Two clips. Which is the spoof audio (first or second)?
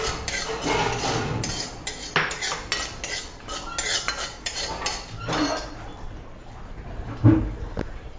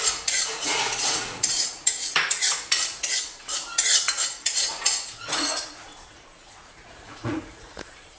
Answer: second